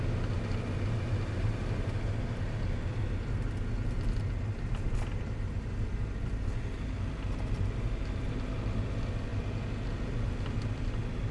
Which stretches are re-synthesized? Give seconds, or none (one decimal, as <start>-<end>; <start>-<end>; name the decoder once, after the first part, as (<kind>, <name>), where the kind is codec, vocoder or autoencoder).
none